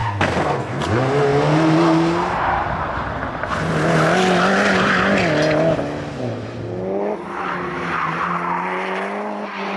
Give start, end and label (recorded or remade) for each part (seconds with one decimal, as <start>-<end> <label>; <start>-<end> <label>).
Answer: 0.0-0.8 remade; 0.8-9.8 recorded